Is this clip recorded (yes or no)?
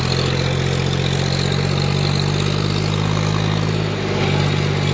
yes